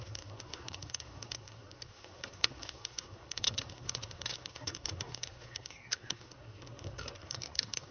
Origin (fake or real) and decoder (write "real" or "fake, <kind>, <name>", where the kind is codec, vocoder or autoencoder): fake, codec, SNAC